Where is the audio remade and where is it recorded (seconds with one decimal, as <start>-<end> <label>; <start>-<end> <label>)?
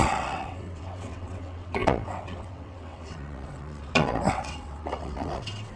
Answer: 0.0-5.8 remade